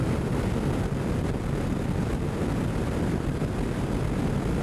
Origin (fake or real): real